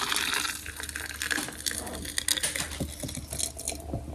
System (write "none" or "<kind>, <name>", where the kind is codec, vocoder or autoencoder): none